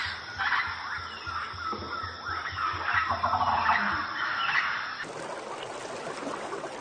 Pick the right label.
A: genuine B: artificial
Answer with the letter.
A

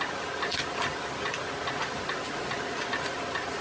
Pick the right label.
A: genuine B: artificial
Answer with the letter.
A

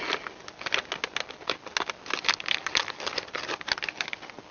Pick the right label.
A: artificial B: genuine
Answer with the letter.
B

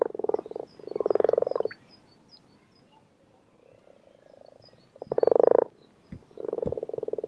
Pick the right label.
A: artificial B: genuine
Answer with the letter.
B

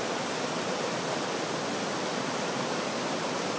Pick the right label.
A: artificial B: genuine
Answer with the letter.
B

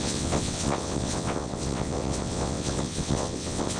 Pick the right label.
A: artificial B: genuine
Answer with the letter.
A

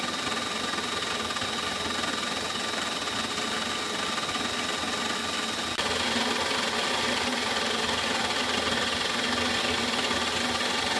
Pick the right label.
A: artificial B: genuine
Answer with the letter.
B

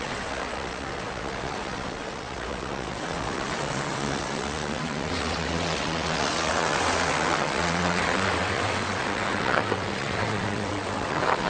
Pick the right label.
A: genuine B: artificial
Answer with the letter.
B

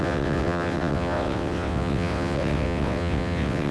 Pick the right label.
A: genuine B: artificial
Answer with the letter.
B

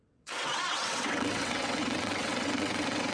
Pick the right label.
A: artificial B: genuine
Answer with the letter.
A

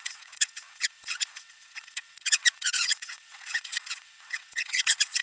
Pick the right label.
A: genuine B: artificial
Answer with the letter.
B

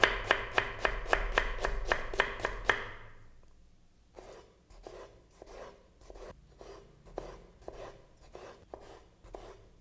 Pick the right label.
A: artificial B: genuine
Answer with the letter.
B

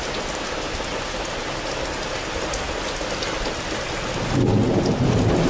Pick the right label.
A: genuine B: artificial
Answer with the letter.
A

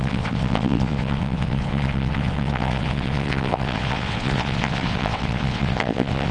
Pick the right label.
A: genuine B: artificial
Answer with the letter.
B